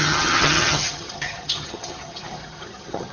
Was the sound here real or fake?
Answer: fake